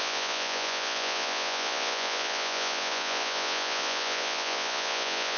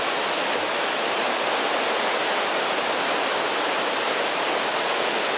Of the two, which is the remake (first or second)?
first